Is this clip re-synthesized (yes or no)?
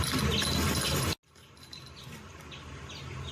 no